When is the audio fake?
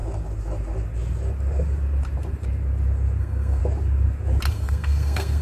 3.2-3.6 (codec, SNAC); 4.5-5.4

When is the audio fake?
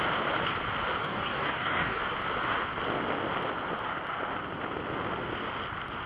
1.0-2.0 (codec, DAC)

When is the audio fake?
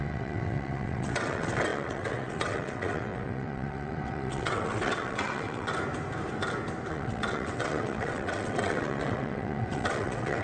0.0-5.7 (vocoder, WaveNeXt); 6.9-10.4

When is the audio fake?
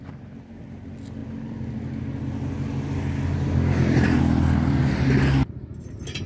none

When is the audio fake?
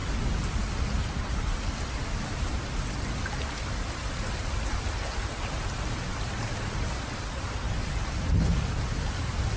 none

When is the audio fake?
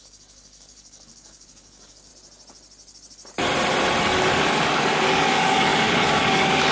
0.0-2.1 (codec, DAC); 4.3-6.7